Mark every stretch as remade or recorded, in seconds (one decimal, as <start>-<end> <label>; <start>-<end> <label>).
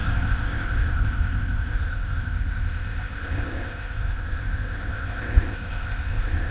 0.0-6.5 remade